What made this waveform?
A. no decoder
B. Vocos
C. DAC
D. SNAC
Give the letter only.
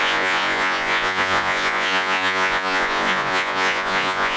B